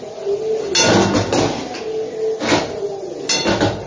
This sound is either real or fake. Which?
real